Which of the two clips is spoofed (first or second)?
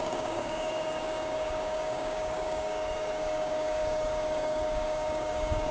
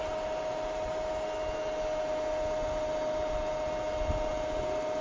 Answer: first